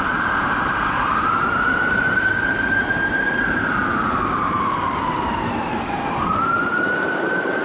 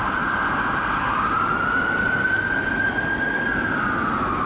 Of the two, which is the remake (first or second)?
first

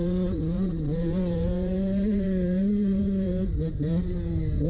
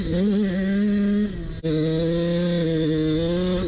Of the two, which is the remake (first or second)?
first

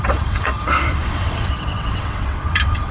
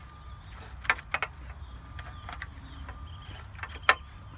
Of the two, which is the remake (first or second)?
first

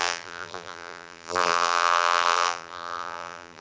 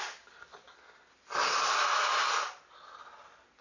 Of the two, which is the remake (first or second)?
first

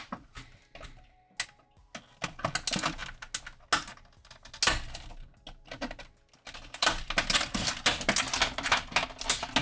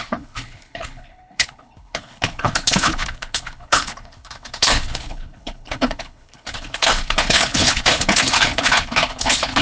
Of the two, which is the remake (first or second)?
second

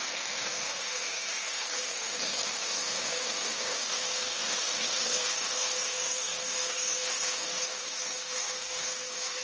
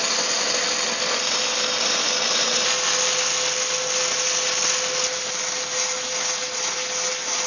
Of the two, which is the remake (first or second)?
first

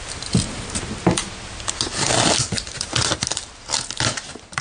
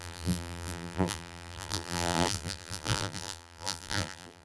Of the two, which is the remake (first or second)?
second